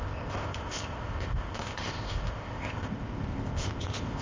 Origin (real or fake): fake